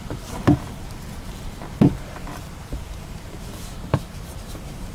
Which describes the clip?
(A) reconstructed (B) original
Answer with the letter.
A